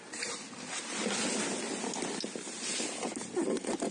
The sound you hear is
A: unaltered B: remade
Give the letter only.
A